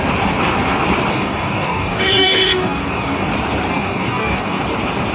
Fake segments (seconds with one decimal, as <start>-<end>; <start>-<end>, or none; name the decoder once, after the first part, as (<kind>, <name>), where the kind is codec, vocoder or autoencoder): 1.1-3.3 (codec, DAC); 3.7-4.6